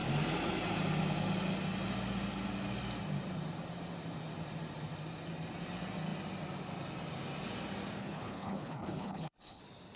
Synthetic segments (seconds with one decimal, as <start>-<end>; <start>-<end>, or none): 8.0-9.6